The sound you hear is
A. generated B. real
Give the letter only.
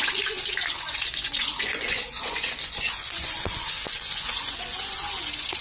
A